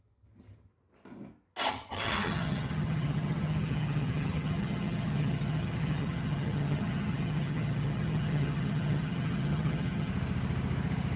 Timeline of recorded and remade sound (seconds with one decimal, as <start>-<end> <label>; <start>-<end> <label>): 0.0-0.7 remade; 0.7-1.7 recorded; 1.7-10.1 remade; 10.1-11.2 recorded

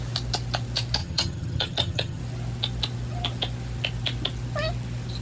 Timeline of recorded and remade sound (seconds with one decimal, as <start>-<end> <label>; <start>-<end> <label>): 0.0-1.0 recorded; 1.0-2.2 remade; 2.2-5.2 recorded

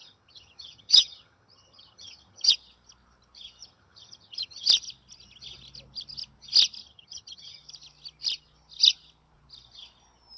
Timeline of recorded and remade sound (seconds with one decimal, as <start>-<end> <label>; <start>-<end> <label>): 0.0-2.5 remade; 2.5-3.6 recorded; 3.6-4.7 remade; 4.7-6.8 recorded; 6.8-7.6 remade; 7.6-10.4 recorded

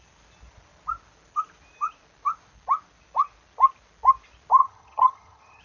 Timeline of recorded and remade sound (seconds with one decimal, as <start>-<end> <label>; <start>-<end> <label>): 0.0-4.6 recorded; 4.6-5.6 remade

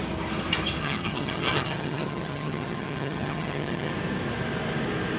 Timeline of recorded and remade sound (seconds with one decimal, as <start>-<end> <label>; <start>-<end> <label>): 0.0-0.8 recorded; 0.8-3.9 remade; 3.9-5.2 recorded